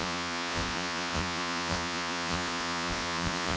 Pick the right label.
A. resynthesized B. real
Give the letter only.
A